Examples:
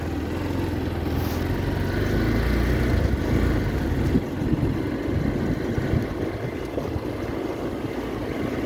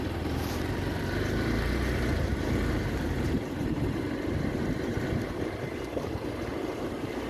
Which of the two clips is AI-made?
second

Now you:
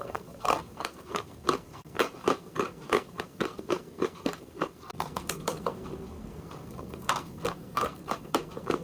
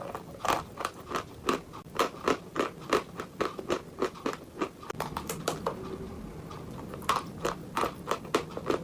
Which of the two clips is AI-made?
first